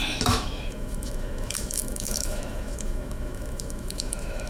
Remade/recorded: remade